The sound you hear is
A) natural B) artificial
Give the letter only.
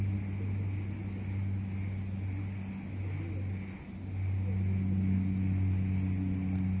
A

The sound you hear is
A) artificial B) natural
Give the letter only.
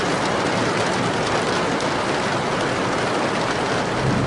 B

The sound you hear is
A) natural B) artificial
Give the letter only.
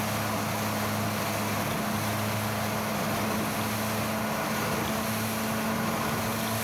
A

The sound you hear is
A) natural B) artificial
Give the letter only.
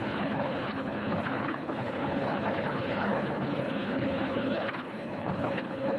B